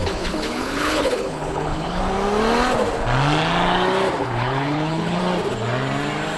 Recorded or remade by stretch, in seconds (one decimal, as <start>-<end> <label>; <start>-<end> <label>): 0.0-2.0 remade; 2.0-4.2 recorded; 4.2-5.2 remade; 5.2-6.4 recorded